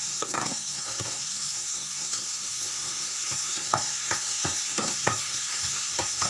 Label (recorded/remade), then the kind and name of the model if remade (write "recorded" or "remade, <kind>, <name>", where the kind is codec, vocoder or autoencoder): remade, codec, SNAC